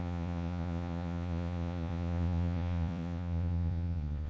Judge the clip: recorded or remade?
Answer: remade